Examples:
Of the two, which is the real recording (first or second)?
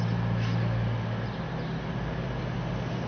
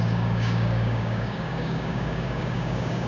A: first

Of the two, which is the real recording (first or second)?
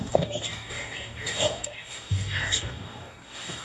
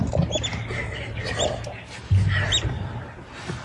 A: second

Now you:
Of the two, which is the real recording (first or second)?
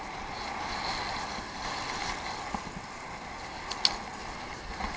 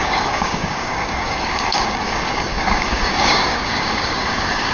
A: first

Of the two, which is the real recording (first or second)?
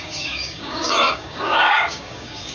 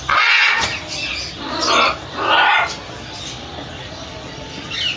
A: second